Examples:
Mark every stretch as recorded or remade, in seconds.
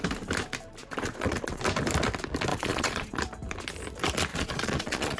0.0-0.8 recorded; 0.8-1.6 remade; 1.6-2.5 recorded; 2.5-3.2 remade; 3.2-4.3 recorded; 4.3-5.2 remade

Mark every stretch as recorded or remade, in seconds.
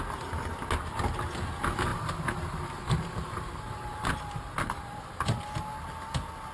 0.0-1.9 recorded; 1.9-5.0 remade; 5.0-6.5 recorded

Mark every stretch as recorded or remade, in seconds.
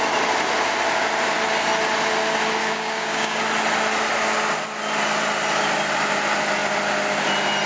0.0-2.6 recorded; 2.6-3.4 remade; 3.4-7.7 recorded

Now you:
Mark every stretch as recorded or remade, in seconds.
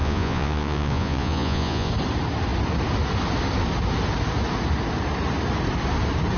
0.0-1.9 remade; 1.9-6.4 recorded